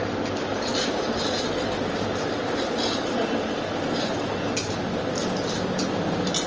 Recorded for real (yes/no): yes